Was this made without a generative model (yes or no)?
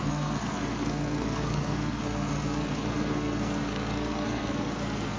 no